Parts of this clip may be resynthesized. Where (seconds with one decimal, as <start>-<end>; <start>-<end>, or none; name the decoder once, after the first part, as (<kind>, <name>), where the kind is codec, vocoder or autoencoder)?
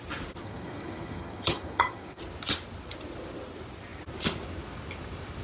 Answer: 0.4-2.2 (vocoder, HiFi-GAN)